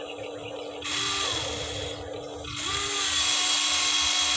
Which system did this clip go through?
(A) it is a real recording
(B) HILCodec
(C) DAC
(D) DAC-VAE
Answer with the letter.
A